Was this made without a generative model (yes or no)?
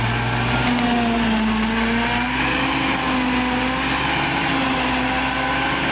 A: yes